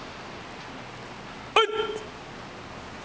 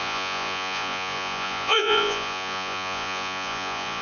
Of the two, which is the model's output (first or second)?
second